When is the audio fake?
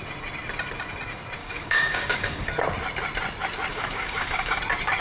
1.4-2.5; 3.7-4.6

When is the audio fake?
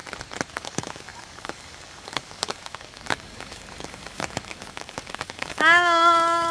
0.5-6.5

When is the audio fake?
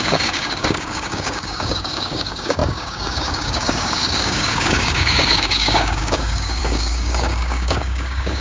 0.0-8.4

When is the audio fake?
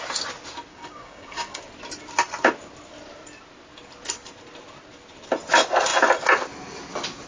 0.7-1.6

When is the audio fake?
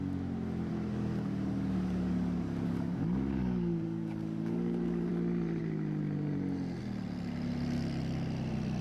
0.7-5.1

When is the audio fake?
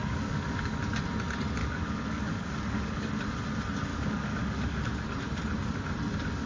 0.0-0.8; 1.6-3.1; 3.9-4.9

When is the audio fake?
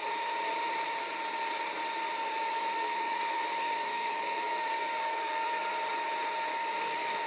2.4-5.6; 6.5-7.3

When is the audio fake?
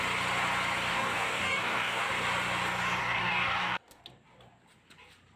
0.9-2.1; 3.0-4.0